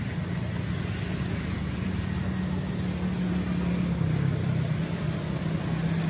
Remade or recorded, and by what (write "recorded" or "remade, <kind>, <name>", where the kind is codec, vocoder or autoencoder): recorded